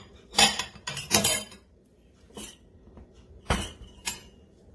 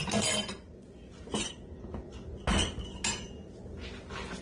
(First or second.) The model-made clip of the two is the first